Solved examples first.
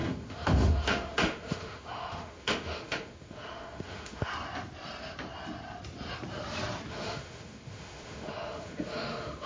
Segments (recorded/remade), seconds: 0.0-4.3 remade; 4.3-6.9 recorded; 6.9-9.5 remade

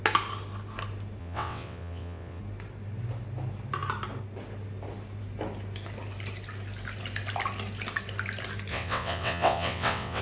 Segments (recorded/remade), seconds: 0.0-1.2 recorded; 1.2-2.4 remade; 2.4-8.7 recorded; 8.7-10.2 remade

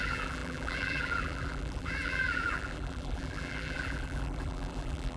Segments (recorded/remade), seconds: 0.0-5.2 remade

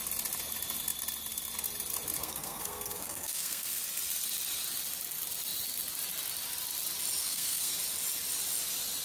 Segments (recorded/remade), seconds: 0.0-2.2 recorded; 2.2-3.8 remade; 3.8-7.2 recorded; 7.2-7.7 remade; 7.7-9.0 recorded

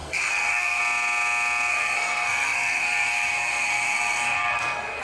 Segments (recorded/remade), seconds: 0.0-0.8 remade; 0.8-1.7 recorded; 1.7-5.0 remade

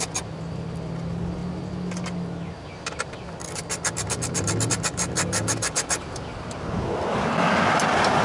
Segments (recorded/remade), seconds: 0.0-8.2 recorded